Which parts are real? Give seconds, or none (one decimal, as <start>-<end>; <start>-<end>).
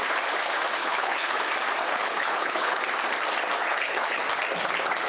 0.0-0.8; 1.4-1.9; 2.8-3.7; 4.2-5.1